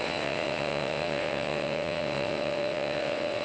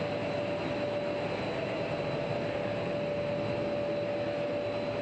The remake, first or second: first